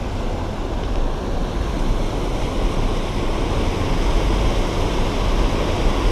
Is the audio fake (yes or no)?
no